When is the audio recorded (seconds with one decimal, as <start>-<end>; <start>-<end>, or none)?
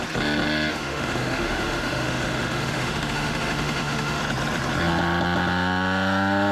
0.0-0.7; 4.2-6.5